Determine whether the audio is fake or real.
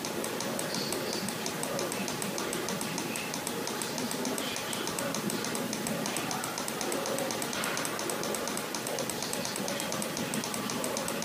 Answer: real